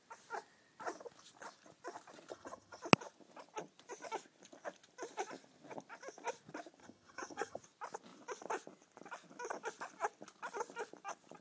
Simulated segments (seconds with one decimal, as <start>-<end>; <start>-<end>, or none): 2.3-2.8; 6.8-7.6